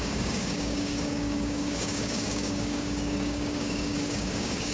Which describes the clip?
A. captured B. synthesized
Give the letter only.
B